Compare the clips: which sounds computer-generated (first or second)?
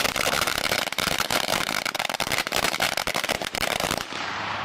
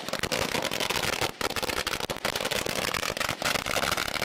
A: first